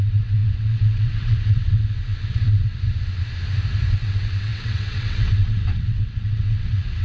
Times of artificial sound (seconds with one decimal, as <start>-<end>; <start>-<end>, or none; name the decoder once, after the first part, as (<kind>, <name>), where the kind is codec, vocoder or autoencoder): 0.0-2.7 (vocoder, WaveNeXt); 3.9-7.0

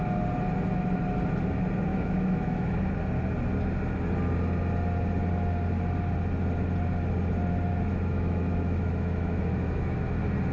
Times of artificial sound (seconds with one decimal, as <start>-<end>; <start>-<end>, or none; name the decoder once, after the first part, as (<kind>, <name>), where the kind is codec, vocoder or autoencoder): 1.9-2.8 (autoencoder, DAC-VAE); 7.7-10.0

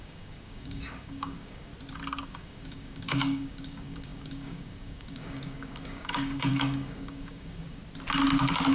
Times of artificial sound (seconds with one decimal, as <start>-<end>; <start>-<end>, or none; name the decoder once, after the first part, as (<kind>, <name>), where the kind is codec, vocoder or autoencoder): 0.0-1.7 (codec, DAC); 2.3-7.8

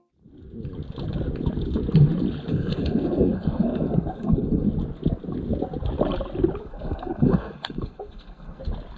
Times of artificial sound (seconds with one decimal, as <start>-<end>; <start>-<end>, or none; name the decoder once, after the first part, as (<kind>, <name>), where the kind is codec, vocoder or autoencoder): 2.5-4.7 (codec, SNAC); 6.6-8.6

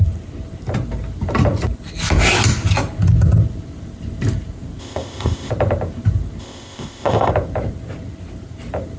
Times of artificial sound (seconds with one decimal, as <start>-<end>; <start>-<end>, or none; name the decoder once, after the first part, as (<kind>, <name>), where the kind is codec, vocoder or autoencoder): 4.8-5.5 (codec, ZipCodec); 6.4-7.3

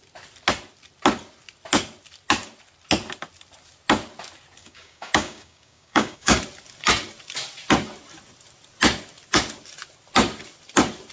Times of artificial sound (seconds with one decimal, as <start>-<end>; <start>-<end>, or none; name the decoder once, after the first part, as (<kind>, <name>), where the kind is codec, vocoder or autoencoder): 4.6-6.4 (codec, DAC)